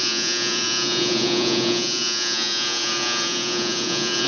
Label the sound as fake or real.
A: fake